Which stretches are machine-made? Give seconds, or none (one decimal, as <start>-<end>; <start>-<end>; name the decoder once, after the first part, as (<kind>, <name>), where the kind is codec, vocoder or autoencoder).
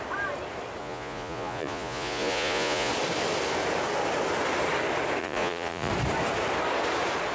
0.8-2.9 (vocoder, Vocos); 5.2-5.9